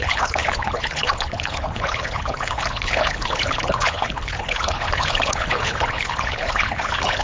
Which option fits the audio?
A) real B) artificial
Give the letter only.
B